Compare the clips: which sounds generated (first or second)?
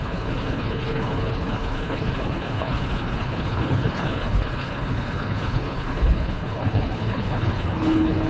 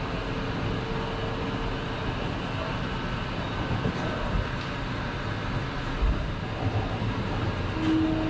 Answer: first